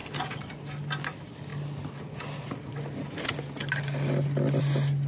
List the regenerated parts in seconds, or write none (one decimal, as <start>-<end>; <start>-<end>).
none